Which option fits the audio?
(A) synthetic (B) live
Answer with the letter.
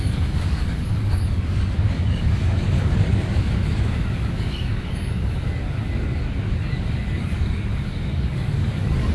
A